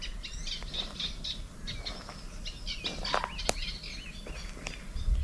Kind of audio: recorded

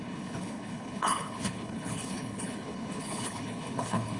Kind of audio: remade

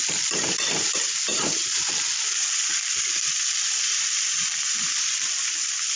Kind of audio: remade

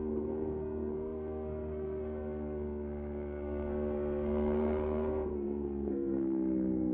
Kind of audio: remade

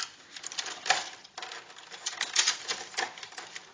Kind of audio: recorded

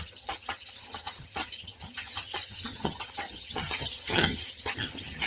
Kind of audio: remade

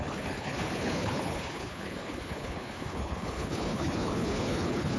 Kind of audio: remade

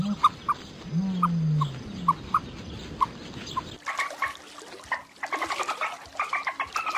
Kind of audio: recorded